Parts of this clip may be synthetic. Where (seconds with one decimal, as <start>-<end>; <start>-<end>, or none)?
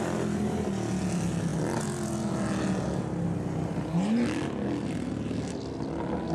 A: none